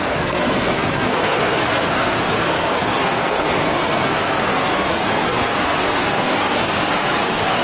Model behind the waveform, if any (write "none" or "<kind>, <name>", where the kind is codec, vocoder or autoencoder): codec, SNAC